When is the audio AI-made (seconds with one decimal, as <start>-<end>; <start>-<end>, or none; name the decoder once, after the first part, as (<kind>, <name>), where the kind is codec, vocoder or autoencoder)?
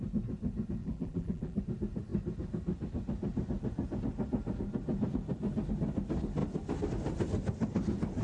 0.8-1.6 (vocoder, BigVGAN v2)